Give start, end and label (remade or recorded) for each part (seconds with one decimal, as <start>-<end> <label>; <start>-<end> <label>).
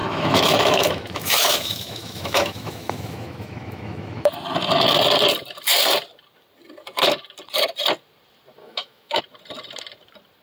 0.0-4.3 remade; 4.3-8.6 recorded; 8.6-9.2 remade; 9.2-10.4 recorded